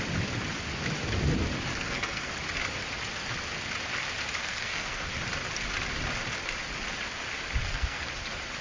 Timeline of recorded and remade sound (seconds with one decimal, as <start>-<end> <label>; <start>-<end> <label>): 0.0-1.7 recorded; 1.7-2.3 remade; 2.3-4.4 recorded; 4.4-5.1 remade; 5.1-7.6 recorded; 7.6-8.1 remade; 8.1-8.6 recorded